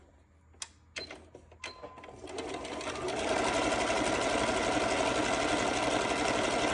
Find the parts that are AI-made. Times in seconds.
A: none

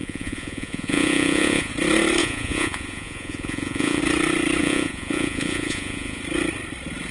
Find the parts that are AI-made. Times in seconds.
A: 0.0-1.7 (vocoder, Vocos); 2.2-4.0; 4.6-6.2

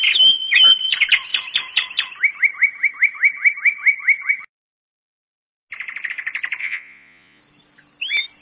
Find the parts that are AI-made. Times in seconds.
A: 6.6-7.4 (vocoder, Vocos)

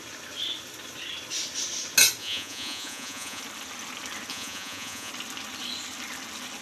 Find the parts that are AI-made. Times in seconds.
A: 2.2-3.4 (vocoder, Vocos); 4.3-5.1

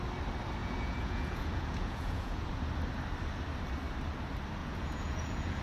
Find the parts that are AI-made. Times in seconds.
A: 0.6-2.5 (vocoder, Vocos); 4.6-5.6

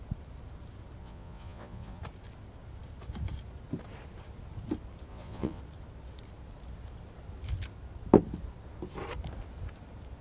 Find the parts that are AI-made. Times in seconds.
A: 1.0-2.0 (vocoder, Vocos); 5.1-5.6